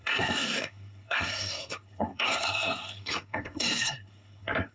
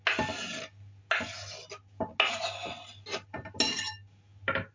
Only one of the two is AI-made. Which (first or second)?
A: first